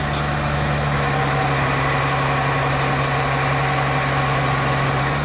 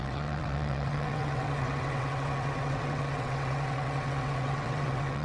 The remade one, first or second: second